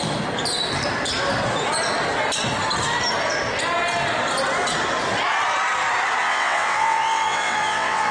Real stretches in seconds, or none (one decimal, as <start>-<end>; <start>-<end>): 0.0-6.2

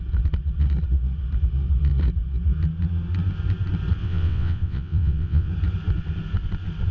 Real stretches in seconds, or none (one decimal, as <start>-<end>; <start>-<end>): 0.0-4.0; 5.5-6.9

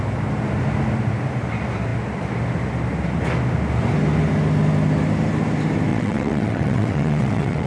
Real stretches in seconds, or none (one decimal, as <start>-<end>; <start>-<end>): 0.0-5.9

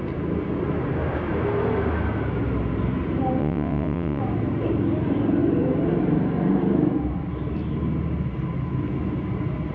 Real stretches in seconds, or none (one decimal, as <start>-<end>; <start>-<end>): 0.0-3.4; 4.2-9.7

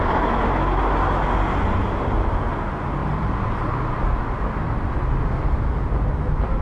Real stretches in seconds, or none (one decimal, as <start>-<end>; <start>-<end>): 0.0-6.6

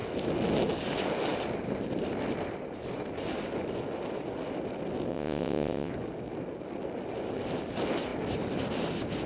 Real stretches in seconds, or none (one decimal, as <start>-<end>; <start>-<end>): 0.0-5.1; 5.9-9.3

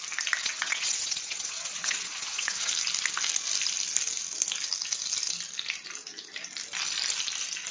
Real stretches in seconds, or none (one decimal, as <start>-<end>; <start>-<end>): 0.0-0.4; 2.7-7.7

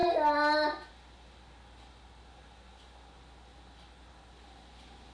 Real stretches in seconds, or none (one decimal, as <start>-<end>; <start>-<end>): 0.0-5.1